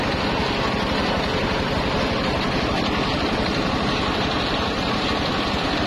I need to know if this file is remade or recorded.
recorded